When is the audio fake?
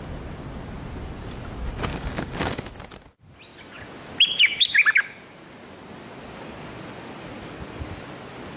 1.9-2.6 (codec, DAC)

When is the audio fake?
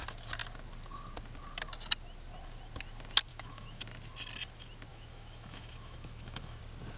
3.3-3.8 (autoencoder, DAC-VAE); 4.9-6.6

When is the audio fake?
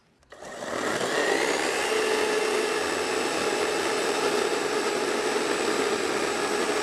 none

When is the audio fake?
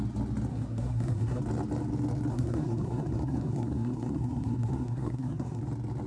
0.5-1.4 (codec, SNAC); 2.3-5.6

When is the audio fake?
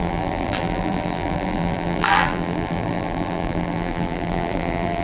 0.0-5.0 (vocoder, BigVGAN v2)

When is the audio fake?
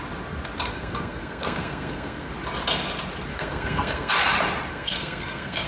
0.7-2.3 (codec, SNAC); 3.3-4.1; 4.7-5.7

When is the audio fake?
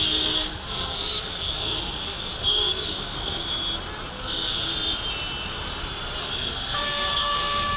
0.0-3.4 (codec, SNAC); 4.1-4.7; 6.2-7.8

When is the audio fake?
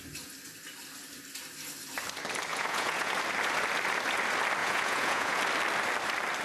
2.5-3.1 (vocoder, Vocos); 4.6-5.4